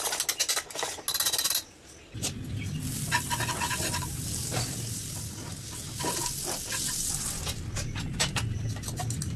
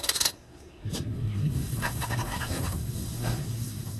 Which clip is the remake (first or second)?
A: second